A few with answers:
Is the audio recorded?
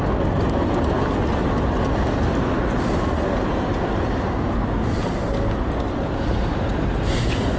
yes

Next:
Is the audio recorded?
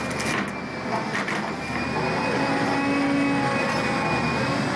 yes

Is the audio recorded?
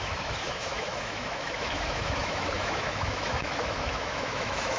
no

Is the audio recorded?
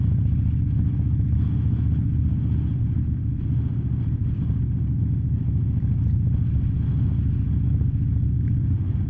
yes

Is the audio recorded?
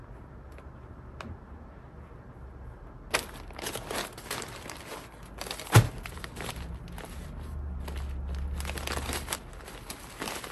yes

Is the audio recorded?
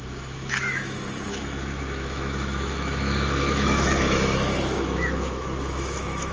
no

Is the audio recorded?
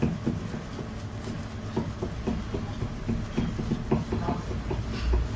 yes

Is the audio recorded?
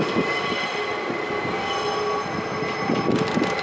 yes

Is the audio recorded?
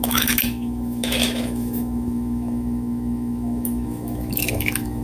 no